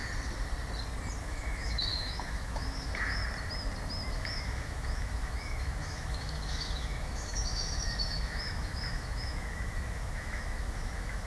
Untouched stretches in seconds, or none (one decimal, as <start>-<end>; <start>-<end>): 0.0-1.2; 3.2-4.1